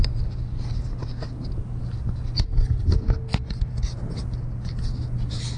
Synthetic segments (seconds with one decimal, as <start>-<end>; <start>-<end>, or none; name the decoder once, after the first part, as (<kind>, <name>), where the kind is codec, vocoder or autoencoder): none